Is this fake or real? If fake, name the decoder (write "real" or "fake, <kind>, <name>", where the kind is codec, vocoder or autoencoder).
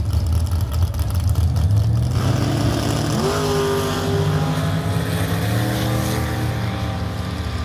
real